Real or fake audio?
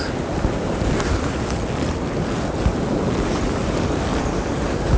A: real